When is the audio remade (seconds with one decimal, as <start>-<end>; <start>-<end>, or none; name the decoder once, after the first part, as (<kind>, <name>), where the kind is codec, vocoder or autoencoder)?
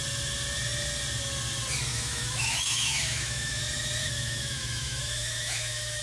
1.9-3.6 (autoencoder, DAC-VAE); 4.0-6.0